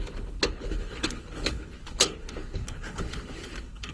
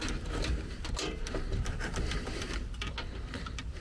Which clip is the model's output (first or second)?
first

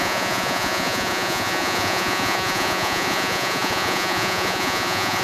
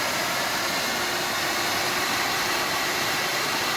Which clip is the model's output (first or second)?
first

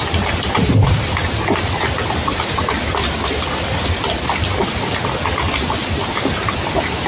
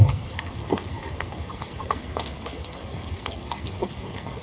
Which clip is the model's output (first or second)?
second